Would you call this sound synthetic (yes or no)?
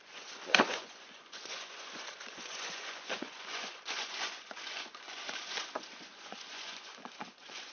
yes